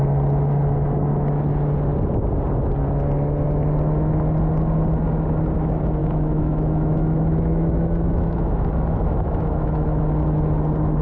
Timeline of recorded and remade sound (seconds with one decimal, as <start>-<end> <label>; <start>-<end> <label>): 0.0-6.0 recorded; 6.0-10.0 remade; 10.0-11.0 recorded